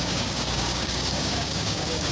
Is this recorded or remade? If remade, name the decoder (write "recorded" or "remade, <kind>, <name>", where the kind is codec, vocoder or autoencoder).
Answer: remade, codec, DAC